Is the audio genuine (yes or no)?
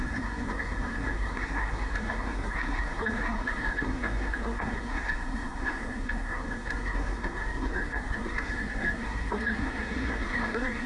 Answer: no